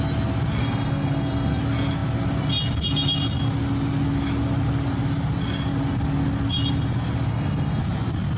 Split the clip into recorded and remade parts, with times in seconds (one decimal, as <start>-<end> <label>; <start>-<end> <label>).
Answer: 0.0-0.6 recorded; 0.6-1.6 remade; 1.6-7.3 recorded; 7.3-7.8 remade; 7.8-8.4 recorded